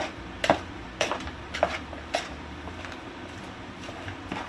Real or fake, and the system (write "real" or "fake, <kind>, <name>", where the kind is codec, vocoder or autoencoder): fake, vocoder, BigVGAN v2